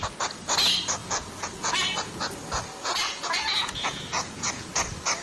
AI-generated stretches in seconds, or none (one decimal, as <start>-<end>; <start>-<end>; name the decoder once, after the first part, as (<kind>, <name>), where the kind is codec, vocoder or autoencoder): 1.0-2.2 (vocoder, Vocos); 2.8-4.7